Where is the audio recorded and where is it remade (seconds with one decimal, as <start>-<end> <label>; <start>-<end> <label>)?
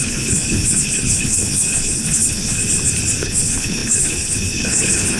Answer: 0.0-2.6 remade; 2.6-3.2 recorded; 3.2-5.2 remade